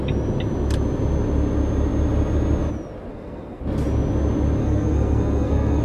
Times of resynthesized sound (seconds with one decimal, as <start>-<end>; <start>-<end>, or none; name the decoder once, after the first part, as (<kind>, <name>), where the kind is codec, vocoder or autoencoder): 3.1-3.6 (codec, SNAC); 4.6-5.8